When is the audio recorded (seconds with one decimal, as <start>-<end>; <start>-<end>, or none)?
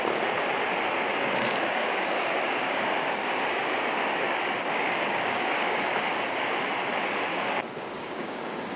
0.0-1.1; 5.8-7.3